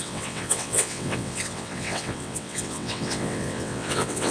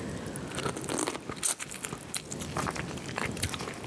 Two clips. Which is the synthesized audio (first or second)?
first